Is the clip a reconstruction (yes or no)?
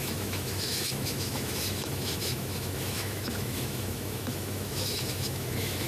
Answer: yes